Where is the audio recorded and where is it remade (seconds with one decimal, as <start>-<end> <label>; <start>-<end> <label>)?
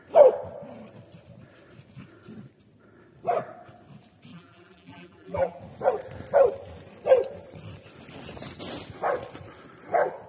0.0-4.3 recorded; 4.3-5.6 remade; 5.6-10.3 recorded